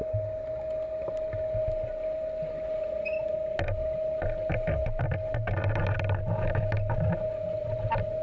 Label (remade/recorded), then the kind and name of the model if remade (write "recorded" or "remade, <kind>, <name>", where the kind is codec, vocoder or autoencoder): recorded